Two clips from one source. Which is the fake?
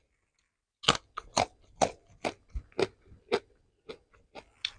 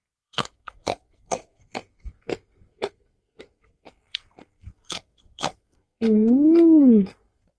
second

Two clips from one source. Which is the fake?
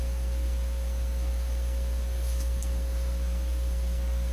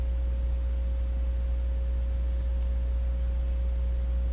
first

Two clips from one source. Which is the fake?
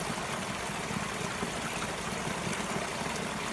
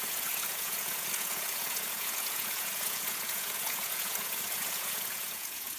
second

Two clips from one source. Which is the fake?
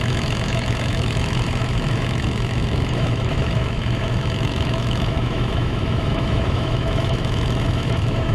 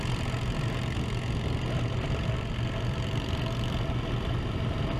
first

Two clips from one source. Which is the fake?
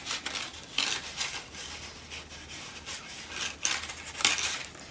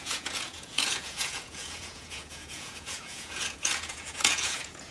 second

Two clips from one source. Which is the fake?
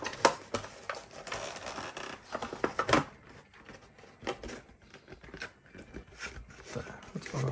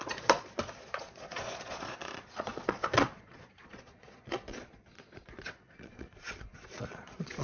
second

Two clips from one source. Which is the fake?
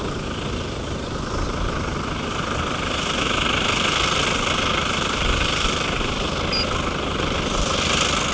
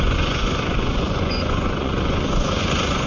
second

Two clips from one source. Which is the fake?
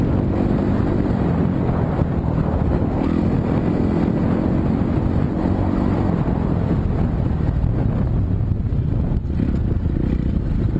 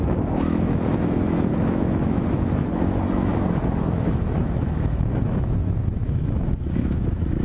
second